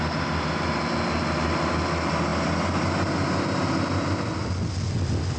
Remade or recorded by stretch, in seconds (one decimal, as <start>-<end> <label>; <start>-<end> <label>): 0.0-5.4 recorded